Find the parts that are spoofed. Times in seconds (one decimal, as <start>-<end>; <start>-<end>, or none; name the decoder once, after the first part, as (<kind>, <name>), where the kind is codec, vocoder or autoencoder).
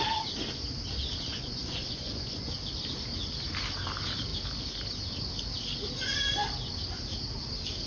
1.3-2.5 (vocoder, Vocos)